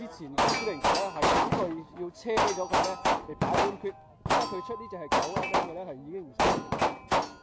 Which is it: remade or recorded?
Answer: recorded